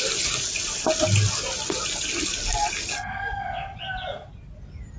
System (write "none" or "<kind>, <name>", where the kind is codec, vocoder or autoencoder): none